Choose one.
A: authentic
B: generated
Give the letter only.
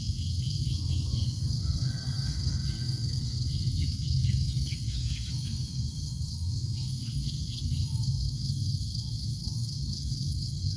B